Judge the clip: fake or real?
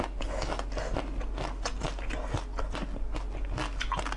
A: real